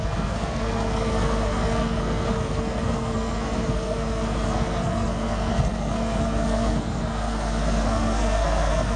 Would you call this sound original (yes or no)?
no